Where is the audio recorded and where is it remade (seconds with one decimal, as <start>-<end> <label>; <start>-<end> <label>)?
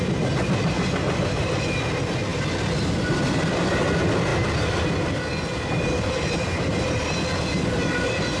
0.0-8.4 recorded